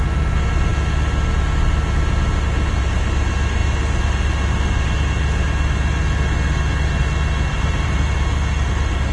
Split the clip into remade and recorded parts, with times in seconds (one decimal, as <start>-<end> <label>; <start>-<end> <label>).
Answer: 0.0-7.5 recorded; 7.5-8.1 remade; 8.1-9.1 recorded